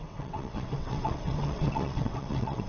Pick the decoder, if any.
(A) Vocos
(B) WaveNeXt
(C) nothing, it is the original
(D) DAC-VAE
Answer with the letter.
B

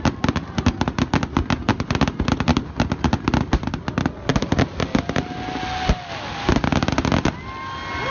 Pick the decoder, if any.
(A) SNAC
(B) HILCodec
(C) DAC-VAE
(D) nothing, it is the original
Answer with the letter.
D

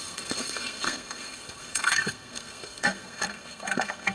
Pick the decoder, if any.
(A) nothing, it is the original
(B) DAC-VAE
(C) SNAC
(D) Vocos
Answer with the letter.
C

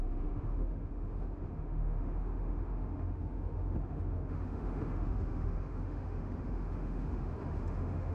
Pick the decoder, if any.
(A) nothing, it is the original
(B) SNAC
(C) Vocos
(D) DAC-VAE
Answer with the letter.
D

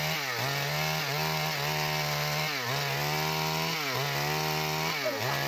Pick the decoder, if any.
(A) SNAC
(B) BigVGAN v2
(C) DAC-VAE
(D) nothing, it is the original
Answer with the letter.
D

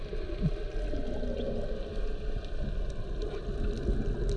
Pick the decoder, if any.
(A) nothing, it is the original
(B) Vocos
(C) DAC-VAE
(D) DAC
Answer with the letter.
A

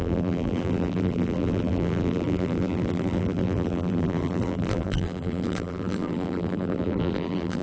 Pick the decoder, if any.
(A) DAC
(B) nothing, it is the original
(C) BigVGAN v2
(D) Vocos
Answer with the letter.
C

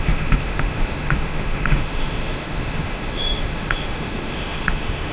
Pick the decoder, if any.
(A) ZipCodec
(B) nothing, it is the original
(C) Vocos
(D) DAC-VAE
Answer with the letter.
D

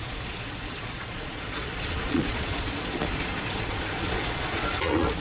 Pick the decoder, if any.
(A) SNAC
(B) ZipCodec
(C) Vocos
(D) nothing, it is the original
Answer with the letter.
C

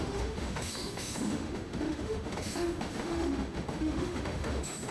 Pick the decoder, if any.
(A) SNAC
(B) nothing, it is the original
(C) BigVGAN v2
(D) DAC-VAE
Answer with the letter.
D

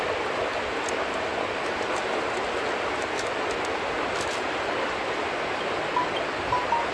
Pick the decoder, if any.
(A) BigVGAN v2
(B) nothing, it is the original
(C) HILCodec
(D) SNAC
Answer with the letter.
B